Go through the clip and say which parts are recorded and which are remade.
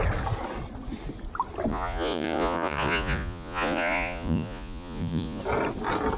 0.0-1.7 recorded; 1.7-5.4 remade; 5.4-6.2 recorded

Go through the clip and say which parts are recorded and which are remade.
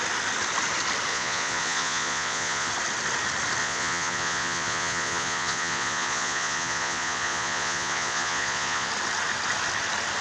0.0-1.1 recorded; 1.1-2.7 remade; 2.7-3.6 recorded; 3.6-8.9 remade; 8.9-10.2 recorded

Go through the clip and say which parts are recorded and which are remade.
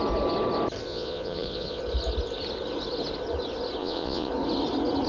0.0-0.9 recorded; 0.9-1.8 remade; 1.8-3.8 recorded; 3.8-4.3 remade; 4.3-5.1 recorded